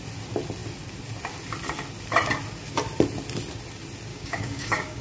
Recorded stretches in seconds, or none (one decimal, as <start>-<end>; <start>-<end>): 0.0-4.1